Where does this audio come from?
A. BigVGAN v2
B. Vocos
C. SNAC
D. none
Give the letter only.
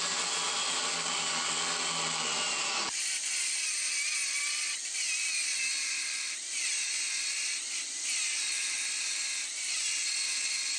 D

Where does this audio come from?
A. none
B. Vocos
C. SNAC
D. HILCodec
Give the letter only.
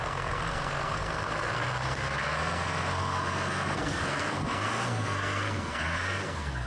C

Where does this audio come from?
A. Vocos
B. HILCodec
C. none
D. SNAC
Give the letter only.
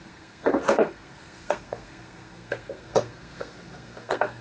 D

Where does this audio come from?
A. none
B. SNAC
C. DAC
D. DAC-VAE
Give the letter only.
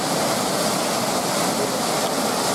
A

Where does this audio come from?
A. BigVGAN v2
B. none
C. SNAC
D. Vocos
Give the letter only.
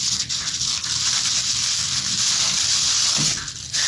B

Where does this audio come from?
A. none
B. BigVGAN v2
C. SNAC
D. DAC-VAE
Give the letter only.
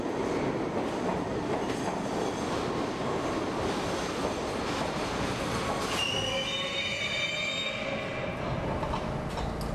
A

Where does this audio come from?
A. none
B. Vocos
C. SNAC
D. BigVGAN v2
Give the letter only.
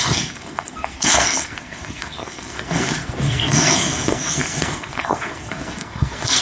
C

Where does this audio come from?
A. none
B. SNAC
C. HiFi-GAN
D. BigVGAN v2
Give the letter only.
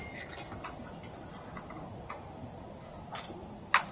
A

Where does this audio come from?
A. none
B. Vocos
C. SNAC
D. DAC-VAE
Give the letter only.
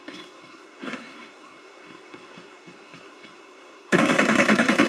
C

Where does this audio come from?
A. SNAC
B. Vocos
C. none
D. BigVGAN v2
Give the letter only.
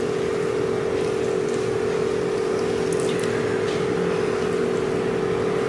C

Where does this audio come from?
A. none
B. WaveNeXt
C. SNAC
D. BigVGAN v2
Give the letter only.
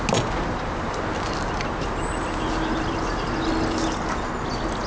A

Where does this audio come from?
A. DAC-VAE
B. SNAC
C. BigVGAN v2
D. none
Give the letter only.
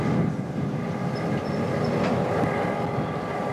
D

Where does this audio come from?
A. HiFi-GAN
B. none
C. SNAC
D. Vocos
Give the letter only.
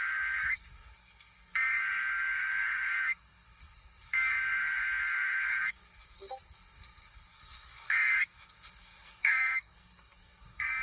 C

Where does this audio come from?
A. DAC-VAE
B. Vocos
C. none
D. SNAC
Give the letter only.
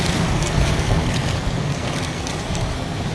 D